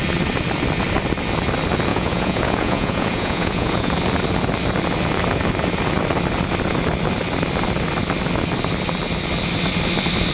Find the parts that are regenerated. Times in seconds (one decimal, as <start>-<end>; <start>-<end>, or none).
1.9-3.9